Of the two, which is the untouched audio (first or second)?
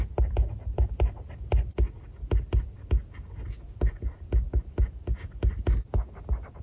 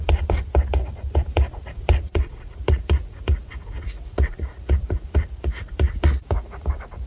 first